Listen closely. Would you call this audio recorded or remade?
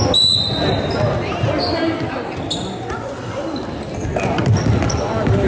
recorded